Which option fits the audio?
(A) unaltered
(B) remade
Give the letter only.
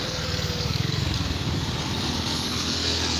B